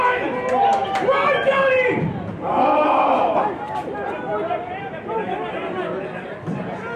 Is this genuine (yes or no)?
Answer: yes